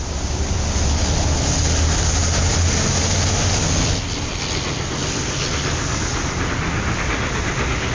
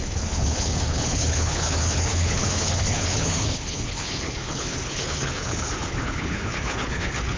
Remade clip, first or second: second